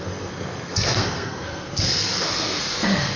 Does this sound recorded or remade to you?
remade